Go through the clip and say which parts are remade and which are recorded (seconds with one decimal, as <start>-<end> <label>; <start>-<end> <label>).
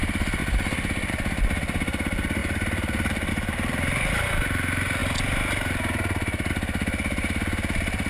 0.0-2.4 recorded; 2.4-3.3 remade; 3.3-8.1 recorded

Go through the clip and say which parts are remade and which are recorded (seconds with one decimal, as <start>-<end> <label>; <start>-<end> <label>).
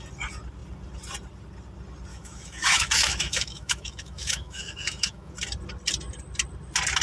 0.0-2.1 recorded; 2.1-5.3 remade; 5.3-7.0 recorded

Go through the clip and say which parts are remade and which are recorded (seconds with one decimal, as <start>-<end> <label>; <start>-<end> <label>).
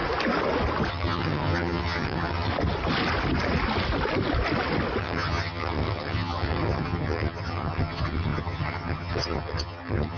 0.0-0.9 recorded; 0.9-2.5 remade; 2.5-5.0 recorded; 5.0-10.2 remade